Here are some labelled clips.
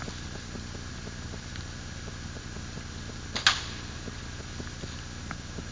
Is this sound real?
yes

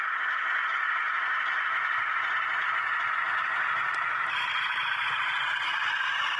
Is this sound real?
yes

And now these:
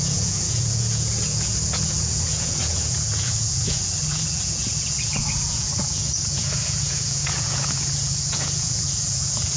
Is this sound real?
no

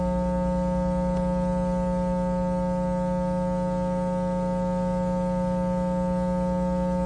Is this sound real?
yes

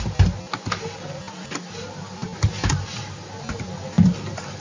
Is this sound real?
yes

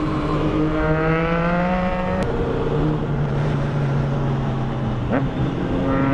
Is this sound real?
no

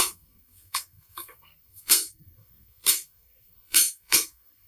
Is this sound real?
no